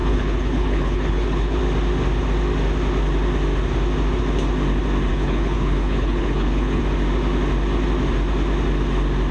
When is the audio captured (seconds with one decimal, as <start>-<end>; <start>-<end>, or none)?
1.6-5.1; 6.8-9.3